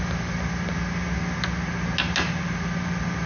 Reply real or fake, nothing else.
real